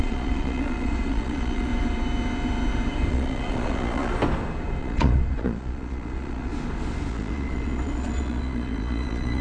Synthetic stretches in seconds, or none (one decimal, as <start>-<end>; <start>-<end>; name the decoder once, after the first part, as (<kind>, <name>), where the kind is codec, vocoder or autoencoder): 0.0-1.7 (vocoder, Vocos); 3.1-4.1; 4.8-6.5; 7.1-9.4